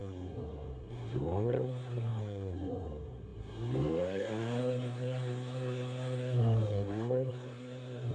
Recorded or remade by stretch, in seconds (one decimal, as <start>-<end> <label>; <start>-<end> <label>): 0.0-8.1 remade